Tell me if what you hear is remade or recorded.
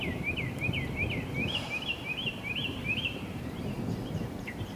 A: remade